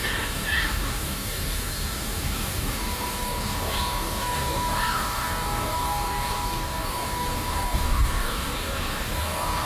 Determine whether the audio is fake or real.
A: fake